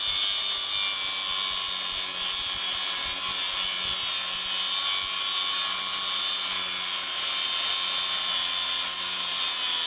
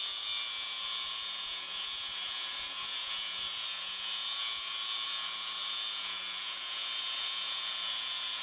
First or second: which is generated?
second